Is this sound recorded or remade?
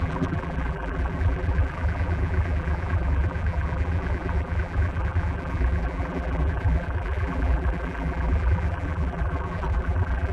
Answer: remade